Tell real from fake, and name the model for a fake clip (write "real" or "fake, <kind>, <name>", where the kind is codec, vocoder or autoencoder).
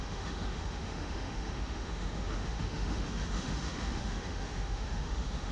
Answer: fake, autoencoder, DAC-VAE